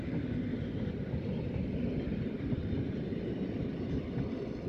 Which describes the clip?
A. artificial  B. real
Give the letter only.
B